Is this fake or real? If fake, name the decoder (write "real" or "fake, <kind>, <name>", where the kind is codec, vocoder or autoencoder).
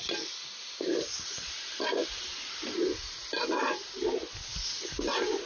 real